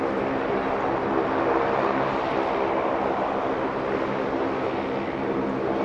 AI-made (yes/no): no